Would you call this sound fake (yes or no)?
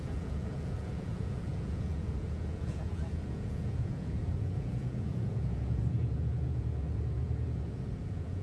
yes